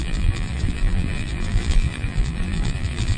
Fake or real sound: fake